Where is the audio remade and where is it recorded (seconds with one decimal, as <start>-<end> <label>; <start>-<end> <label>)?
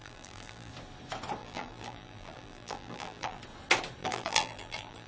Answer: 0.0-0.7 remade; 0.7-1.4 recorded; 1.4-3.4 remade; 3.4-4.0 recorded; 4.0-5.1 remade